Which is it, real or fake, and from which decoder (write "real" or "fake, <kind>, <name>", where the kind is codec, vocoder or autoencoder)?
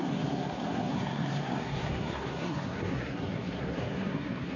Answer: fake, codec, SNAC